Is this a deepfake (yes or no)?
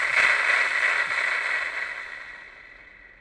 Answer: no